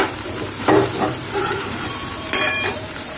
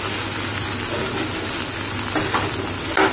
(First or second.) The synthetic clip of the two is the first